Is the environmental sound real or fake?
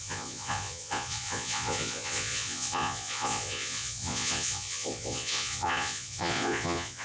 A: fake